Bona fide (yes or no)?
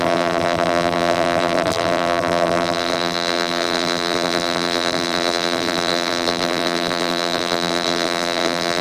no